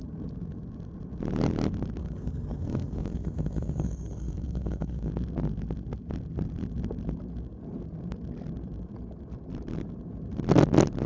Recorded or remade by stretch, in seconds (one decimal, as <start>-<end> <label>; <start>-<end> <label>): 0.0-2.0 recorded; 2.0-5.1 remade; 5.1-11.1 recorded